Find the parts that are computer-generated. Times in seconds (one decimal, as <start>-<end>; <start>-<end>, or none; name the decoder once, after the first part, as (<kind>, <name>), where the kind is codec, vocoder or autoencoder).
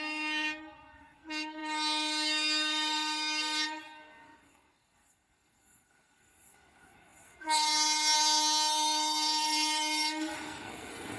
0.0-11.2 (codec, SNAC)